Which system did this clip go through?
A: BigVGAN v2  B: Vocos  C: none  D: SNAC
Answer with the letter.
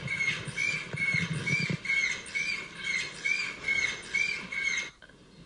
C